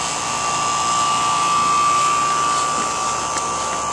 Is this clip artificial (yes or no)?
no